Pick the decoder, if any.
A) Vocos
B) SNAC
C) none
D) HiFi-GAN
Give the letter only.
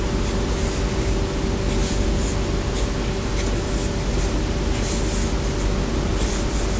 C